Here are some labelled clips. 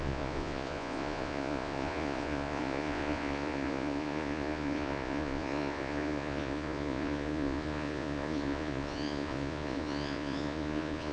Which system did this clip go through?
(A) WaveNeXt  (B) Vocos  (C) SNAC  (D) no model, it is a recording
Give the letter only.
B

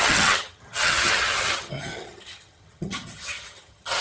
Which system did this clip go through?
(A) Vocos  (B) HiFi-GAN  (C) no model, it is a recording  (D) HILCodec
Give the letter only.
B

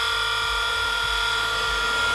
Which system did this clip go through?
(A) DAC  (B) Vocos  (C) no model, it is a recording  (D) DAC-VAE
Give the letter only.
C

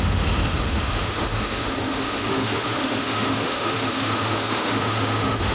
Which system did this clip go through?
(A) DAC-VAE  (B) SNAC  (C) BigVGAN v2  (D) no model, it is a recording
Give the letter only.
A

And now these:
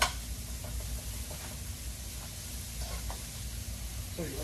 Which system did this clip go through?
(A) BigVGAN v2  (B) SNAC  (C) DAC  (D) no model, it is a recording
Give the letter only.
D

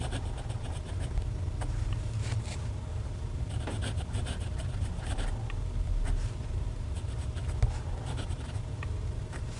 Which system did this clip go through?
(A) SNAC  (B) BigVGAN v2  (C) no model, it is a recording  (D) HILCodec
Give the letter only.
B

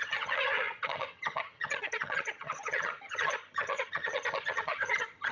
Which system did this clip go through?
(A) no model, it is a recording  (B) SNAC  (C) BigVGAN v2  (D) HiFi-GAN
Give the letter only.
D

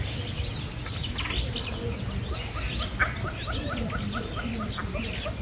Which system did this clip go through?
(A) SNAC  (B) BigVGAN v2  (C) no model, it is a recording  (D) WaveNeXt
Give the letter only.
C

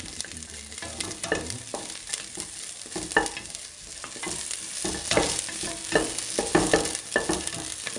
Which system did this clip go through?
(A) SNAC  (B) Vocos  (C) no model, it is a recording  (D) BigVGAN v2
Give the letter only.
C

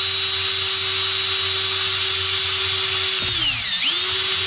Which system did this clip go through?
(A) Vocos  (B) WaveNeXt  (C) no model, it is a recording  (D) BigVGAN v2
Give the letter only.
C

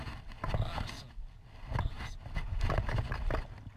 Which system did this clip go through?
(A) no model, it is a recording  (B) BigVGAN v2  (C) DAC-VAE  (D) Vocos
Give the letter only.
A